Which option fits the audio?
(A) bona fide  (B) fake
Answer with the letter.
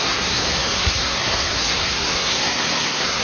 B